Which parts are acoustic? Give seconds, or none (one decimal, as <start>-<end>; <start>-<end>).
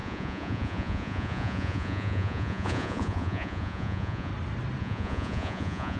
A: 4.3-4.8